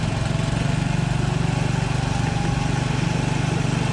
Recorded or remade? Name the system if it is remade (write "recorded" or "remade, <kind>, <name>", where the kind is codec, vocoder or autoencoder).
recorded